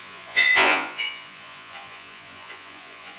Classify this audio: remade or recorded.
remade